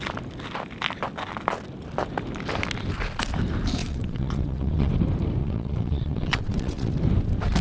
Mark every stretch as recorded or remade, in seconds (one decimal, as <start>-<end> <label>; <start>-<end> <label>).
0.0-3.8 recorded; 3.8-4.9 remade; 4.9-5.4 recorded; 5.4-6.9 remade; 6.9-7.6 recorded